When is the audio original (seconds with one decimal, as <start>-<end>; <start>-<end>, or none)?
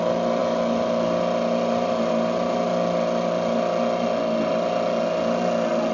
0.0-5.9